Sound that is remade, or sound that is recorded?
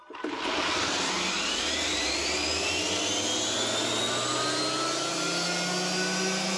recorded